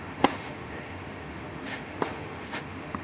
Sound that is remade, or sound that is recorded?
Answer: remade